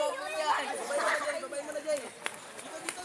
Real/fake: real